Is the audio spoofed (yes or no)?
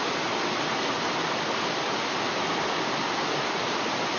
no